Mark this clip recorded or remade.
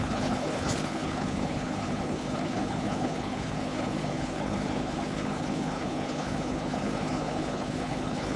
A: remade